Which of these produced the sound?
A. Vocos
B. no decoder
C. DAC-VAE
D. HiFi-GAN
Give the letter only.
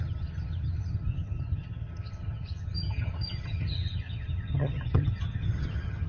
D